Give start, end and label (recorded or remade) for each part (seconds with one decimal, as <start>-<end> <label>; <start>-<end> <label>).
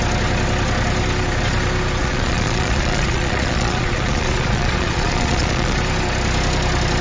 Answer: 0.0-2.0 recorded; 2.0-5.8 remade; 5.8-7.0 recorded